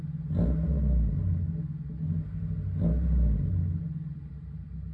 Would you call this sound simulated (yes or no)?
no